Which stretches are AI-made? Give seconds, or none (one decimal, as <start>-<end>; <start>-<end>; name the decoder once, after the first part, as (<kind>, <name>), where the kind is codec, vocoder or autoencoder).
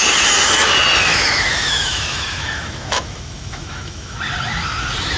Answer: 1.1-4.2 (autoencoder, DAC-VAE)